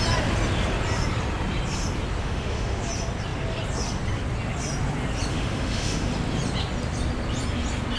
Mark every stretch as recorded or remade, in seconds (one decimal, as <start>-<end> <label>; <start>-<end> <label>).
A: 0.0-2.2 recorded; 2.2-2.8 remade; 2.8-5.3 recorded; 5.3-6.1 remade; 6.1-8.0 recorded